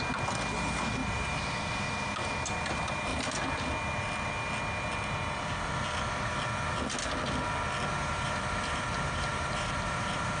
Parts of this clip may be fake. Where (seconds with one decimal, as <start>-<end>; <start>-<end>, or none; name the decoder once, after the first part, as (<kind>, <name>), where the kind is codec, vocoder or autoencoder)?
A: 1.0-2.3 (vocoder, BigVGAN v2); 8.0-10.4